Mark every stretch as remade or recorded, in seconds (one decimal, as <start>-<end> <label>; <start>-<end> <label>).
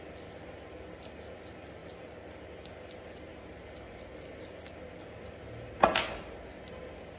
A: 0.0-7.2 recorded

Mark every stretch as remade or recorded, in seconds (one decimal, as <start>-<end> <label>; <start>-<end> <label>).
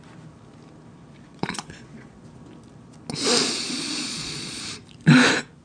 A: 0.0-1.3 recorded; 1.3-2.2 remade; 2.2-3.4 recorded; 3.4-4.6 remade; 4.6-5.6 recorded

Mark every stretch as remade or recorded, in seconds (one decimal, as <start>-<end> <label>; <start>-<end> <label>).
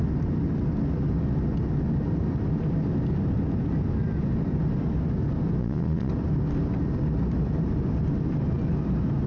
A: 0.0-5.6 recorded; 5.6-6.1 remade; 6.1-9.3 recorded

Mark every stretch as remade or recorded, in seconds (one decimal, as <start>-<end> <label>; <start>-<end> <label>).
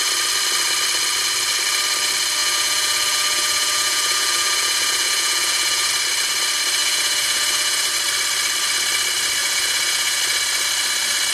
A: 0.0-2.4 recorded; 2.4-5.9 remade; 5.9-6.8 recorded; 6.8-7.9 remade; 7.9-9.4 recorded; 9.4-10.2 remade; 10.2-11.3 recorded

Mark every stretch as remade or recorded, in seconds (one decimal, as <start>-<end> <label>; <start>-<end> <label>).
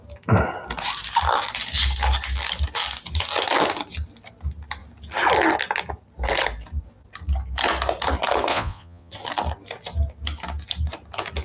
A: 0.0-8.5 recorded; 8.5-9.1 remade; 9.1-11.4 recorded